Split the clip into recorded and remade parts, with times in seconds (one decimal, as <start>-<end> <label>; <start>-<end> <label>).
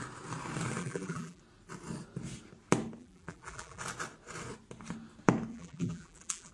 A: 0.0-0.8 recorded; 0.8-1.4 remade; 1.4-3.0 recorded; 3.0-3.8 remade; 3.8-5.5 recorded; 5.5-6.5 remade